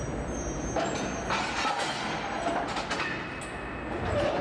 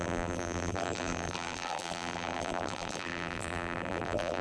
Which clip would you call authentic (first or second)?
first